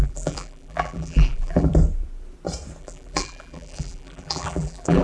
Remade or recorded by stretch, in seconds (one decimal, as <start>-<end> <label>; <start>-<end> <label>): 0.0-1.7 remade; 1.7-2.8 recorded; 2.8-5.0 remade